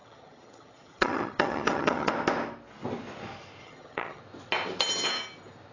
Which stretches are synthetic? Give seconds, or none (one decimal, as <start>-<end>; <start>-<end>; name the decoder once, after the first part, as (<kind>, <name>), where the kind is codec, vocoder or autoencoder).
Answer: 0.0-2.1 (vocoder, HiFi-GAN); 3.6-4.2